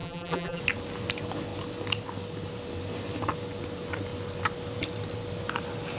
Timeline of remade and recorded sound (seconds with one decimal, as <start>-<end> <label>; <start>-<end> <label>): 0.0-0.6 remade; 0.6-6.0 recorded